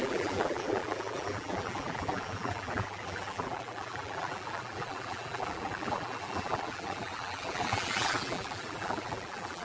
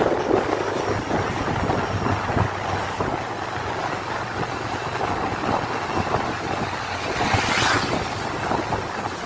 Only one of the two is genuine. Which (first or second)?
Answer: second